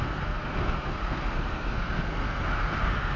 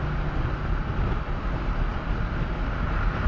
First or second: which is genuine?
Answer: second